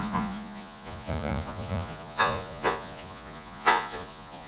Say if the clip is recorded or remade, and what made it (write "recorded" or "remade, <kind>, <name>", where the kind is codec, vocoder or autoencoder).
remade, vocoder, Vocos